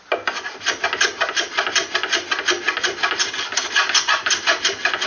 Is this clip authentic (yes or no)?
yes